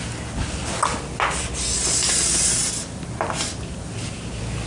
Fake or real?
real